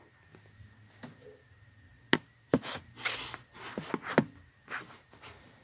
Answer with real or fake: real